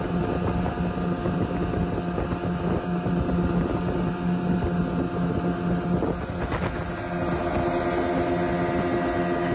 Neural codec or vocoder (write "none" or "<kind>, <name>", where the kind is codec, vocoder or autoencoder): none